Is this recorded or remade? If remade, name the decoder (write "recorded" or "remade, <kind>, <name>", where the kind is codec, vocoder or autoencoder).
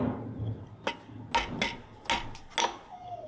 recorded